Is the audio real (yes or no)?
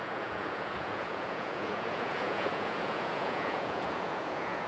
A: no